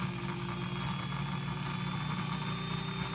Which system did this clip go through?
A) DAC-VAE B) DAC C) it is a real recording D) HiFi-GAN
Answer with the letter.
C